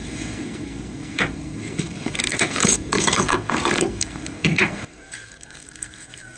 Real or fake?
fake